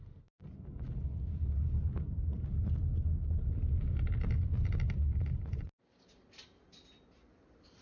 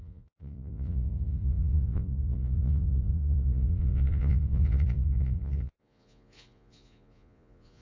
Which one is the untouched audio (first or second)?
first